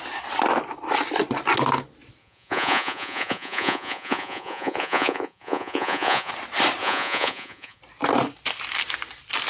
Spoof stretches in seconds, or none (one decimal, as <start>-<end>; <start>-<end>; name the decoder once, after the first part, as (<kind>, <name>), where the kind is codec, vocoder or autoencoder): 2.2-6.3 (vocoder, Vocos); 6.8-7.8